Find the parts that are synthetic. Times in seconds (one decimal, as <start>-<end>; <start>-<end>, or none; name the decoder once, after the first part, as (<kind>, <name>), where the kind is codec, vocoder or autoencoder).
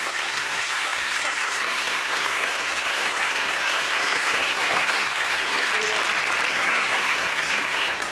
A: 0.0-5.7 (codec, SNAC); 6.5-8.1